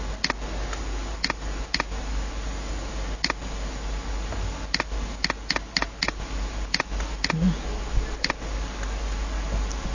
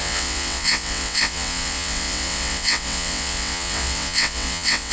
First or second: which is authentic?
first